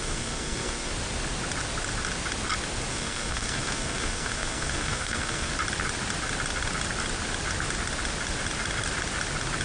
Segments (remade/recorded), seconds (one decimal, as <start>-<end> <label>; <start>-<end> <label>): 0.0-0.9 remade; 0.9-2.9 recorded; 2.9-5.5 remade; 5.5-9.6 recorded